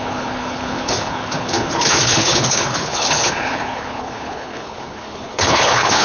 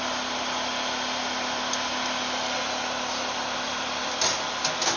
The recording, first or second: second